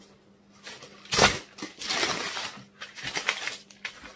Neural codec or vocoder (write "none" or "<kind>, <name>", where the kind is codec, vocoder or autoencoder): none